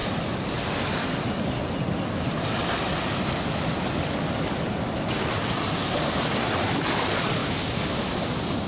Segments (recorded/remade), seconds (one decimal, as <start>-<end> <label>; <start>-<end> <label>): 0.0-0.5 remade; 0.5-8.7 recorded